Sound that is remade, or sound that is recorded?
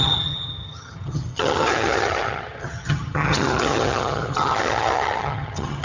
remade